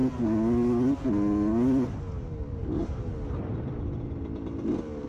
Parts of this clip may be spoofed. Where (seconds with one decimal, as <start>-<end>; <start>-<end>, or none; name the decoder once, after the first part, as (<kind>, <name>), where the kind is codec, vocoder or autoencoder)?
none